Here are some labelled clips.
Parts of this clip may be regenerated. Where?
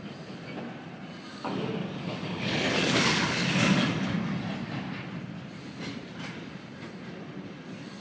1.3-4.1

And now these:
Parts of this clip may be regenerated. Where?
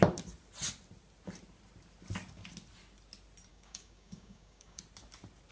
3.5-4.8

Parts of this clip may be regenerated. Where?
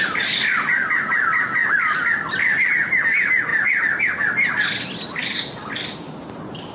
none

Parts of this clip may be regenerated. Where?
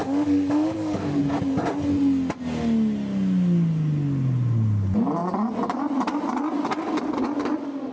0.0-1.2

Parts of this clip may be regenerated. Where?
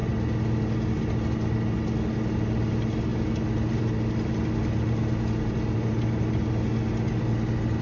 none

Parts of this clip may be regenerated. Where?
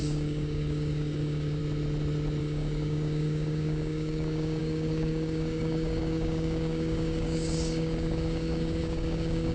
0.0-1.6; 2.4-9.5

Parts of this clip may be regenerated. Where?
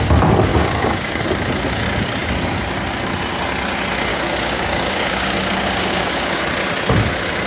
0.5-1.2; 4.1-6.4